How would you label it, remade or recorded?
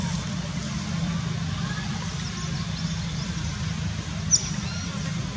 recorded